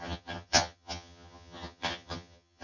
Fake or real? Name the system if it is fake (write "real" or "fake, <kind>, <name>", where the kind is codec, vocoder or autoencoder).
fake, vocoder, HiFi-GAN